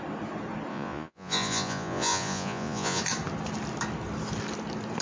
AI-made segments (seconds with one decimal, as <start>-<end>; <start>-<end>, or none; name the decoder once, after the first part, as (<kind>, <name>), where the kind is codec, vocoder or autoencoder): 0.7-3.0 (vocoder, Vocos)